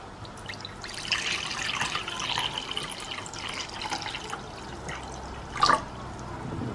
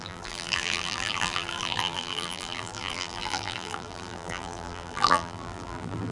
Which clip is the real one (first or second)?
first